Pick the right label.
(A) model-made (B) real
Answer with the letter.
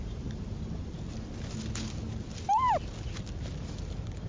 B